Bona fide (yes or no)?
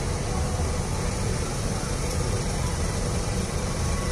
no